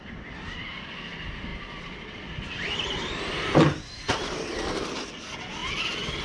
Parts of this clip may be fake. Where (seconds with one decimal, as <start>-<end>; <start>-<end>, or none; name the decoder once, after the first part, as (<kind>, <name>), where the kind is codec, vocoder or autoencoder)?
0.0-5.6 (vocoder, BigVGAN v2)